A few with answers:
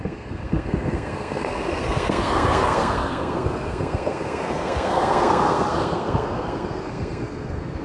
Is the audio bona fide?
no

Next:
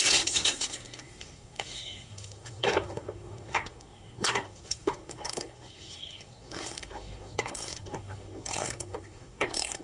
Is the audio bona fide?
no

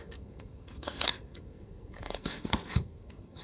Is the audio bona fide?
no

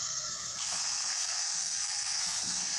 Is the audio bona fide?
no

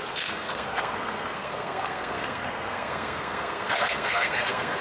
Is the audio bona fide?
no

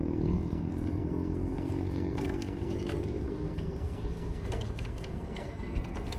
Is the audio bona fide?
no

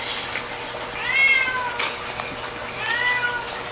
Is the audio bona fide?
yes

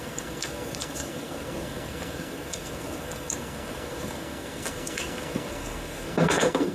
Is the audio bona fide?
no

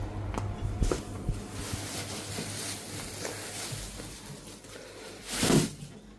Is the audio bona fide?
yes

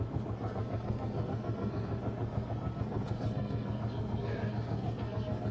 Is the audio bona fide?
no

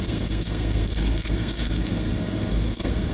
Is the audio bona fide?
no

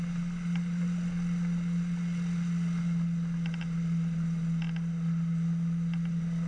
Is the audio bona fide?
yes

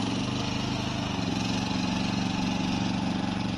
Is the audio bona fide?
yes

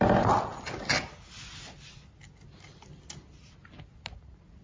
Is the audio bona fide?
yes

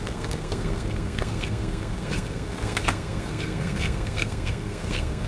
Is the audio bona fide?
no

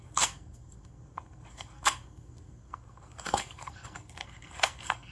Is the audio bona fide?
no